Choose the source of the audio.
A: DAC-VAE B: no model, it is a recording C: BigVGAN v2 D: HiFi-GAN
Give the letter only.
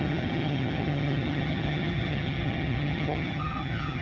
D